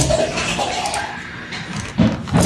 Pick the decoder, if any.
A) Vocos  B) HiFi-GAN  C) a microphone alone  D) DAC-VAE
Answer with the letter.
C